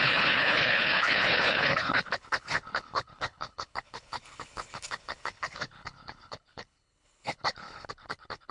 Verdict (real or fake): fake